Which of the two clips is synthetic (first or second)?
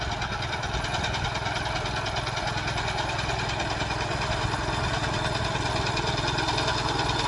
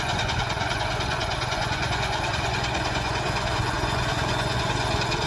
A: second